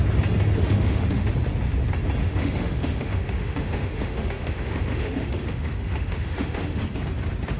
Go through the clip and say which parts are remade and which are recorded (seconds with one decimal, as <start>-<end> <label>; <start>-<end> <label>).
0.0-0.6 recorded; 0.6-1.3 remade; 1.3-2.2 recorded; 2.2-6.8 remade; 6.8-7.6 recorded